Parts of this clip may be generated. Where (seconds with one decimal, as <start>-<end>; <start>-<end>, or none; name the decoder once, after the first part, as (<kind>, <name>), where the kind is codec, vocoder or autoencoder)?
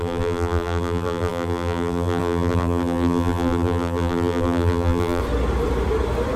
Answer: 0.0-5.2 (vocoder, BigVGAN v2)